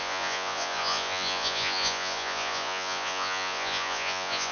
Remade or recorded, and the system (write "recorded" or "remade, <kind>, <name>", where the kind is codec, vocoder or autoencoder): remade, vocoder, Vocos